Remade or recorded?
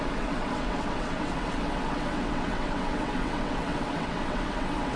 remade